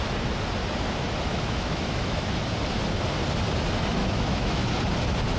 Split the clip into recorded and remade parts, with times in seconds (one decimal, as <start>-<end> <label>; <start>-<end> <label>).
0.0-1.3 recorded; 1.3-2.5 remade; 2.5-4.0 recorded; 4.0-4.7 remade; 4.7-5.4 recorded

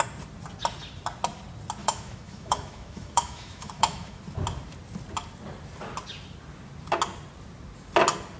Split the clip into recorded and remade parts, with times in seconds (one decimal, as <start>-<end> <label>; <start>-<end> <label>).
0.0-1.8 recorded; 1.8-4.2 remade; 4.2-8.4 recorded

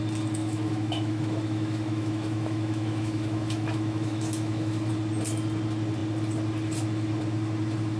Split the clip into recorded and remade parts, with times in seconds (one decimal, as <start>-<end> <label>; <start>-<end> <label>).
0.0-0.4 recorded; 0.4-4.9 remade; 4.9-8.0 recorded